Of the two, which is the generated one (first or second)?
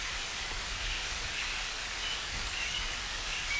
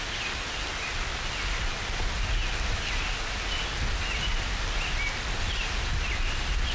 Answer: first